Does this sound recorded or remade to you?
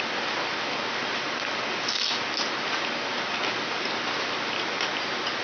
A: recorded